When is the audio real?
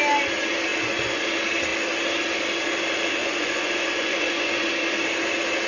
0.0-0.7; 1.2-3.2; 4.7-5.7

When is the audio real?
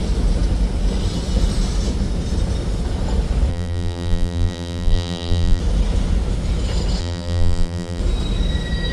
0.0-3.5; 5.6-7.0; 8.0-8.9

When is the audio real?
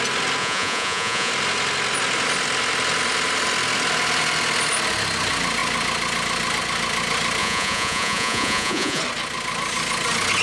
0.0-0.4; 1.3-7.4; 9.0-10.4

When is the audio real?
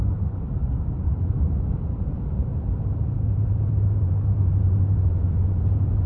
none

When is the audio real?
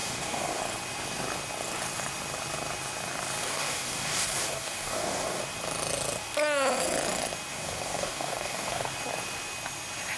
0.6-3.4; 5.4-7.5; 8.9-10.2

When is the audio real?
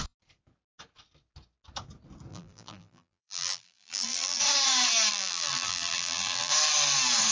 0.0-2.3; 4.4-5.1; 6.5-7.3